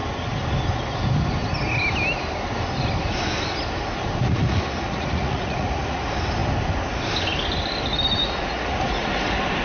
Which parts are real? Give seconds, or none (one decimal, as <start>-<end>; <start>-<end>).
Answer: 0.0-4.2; 6.0-8.2; 9.1-9.6